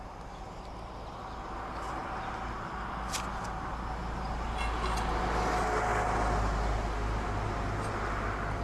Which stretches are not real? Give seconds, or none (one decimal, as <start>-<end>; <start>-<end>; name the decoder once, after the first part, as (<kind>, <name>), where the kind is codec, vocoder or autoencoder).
none